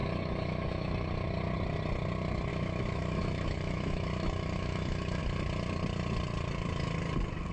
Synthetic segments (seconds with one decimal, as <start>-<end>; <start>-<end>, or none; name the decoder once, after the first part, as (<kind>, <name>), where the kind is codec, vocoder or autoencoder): 0.0-0.9 (autoencoder, DAC-VAE); 2.5-5.2